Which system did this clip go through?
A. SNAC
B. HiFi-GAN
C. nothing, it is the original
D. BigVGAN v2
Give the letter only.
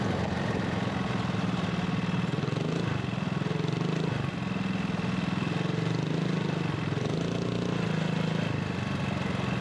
C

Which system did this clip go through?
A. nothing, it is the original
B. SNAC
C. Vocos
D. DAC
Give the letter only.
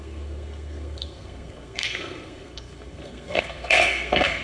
B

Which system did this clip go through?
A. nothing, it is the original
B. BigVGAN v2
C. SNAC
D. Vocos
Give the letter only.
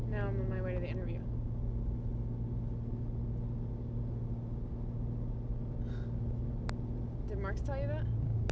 A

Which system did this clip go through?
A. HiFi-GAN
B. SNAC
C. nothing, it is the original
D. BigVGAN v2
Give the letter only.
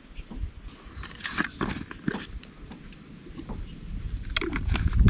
C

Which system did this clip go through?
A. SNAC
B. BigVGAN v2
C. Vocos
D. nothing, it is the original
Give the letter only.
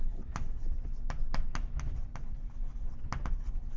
D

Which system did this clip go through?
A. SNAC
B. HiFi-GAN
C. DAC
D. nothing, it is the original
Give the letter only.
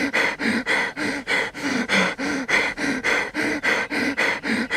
D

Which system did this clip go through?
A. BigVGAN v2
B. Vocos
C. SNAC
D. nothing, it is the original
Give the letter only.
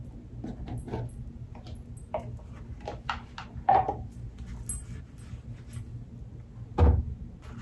D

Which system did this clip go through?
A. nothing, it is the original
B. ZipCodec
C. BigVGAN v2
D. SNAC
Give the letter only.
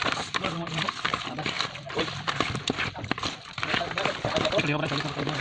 A